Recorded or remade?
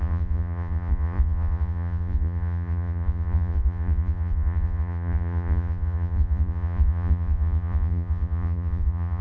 remade